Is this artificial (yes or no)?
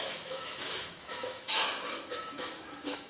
yes